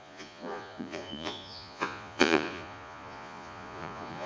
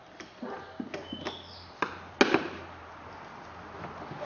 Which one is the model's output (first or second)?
first